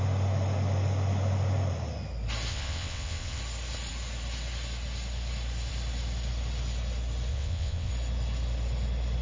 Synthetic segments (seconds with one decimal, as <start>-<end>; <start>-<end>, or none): 2.5-3.4; 7.3-7.9